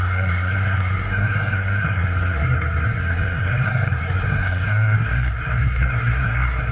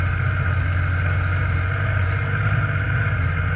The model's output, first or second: first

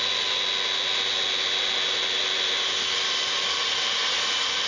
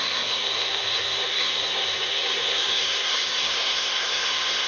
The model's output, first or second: second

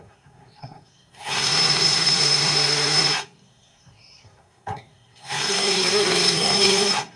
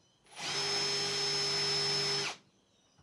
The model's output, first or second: first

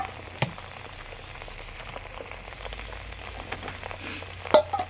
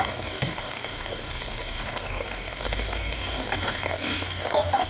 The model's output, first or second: second